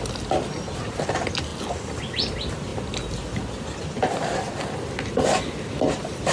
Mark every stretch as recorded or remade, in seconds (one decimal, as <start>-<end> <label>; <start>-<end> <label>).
0.0-6.3 recorded